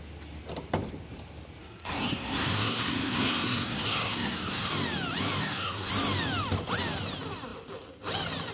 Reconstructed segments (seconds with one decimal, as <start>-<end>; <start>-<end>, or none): 1.6-4.7; 5.4-5.9